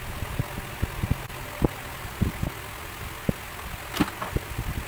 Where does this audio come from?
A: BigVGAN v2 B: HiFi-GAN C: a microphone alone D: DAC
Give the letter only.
C